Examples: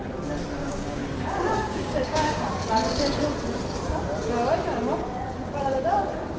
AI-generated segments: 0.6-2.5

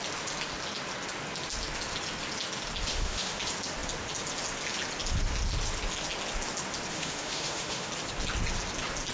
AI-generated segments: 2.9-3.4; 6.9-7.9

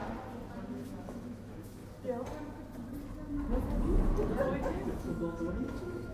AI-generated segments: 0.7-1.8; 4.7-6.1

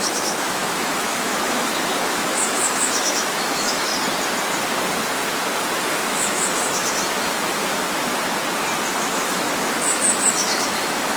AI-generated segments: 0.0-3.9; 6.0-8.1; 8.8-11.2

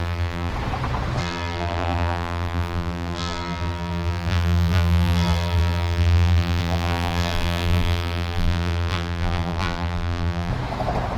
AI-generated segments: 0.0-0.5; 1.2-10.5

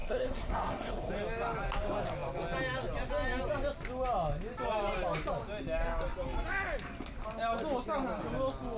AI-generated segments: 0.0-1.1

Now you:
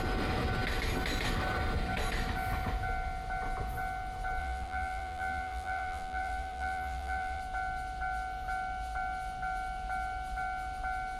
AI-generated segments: 4.4-7.4